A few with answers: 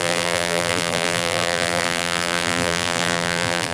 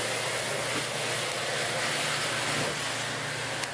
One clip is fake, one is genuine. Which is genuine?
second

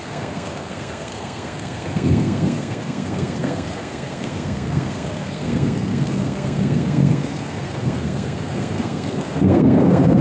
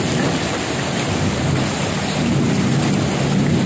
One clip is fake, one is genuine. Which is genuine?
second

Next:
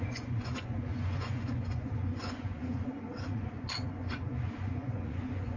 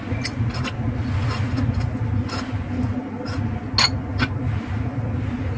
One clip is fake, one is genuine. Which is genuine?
second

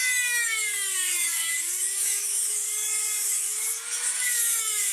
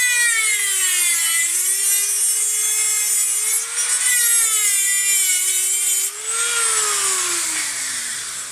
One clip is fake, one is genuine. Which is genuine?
second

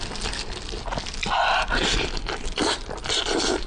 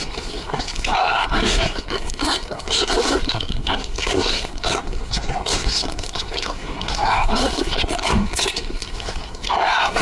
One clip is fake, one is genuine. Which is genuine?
first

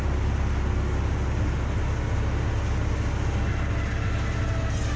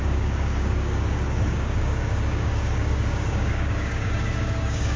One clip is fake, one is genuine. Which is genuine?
first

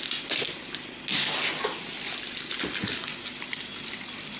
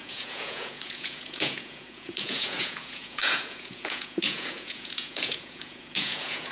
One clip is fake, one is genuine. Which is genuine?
first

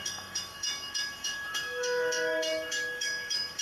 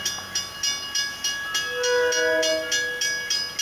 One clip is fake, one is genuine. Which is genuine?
second